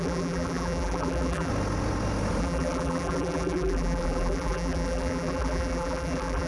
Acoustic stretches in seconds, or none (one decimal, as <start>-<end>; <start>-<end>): 1.5-2.4

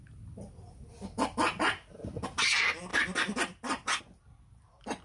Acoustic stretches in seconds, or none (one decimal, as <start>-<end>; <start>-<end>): 0.0-2.9; 4.0-5.0

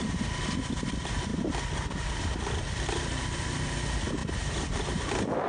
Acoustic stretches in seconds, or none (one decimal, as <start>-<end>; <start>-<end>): none

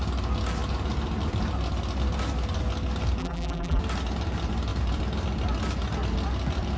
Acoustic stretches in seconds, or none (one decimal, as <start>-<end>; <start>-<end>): 0.0-3.2; 3.8-6.8

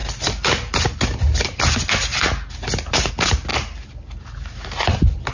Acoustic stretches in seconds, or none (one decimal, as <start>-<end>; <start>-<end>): 0.0-5.3